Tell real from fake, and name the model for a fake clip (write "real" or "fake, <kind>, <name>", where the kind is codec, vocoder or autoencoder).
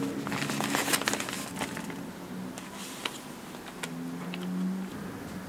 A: real